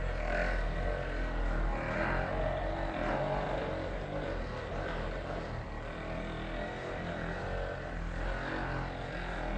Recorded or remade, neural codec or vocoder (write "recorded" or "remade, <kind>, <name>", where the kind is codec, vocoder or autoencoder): recorded